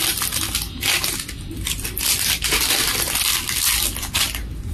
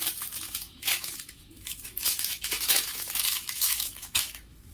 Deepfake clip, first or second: second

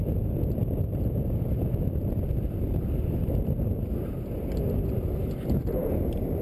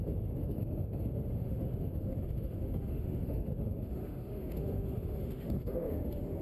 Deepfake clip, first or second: second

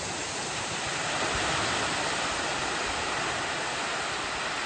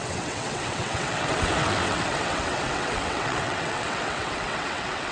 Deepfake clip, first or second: second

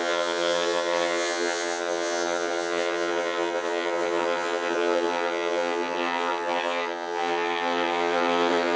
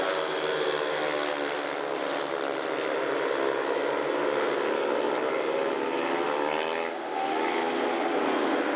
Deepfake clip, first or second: first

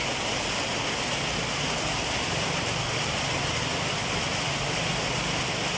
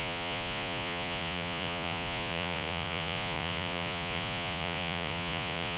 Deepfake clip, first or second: second